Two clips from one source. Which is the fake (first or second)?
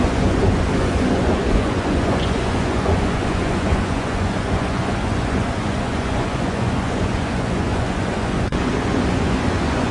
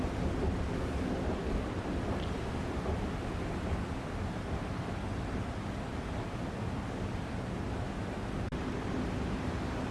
first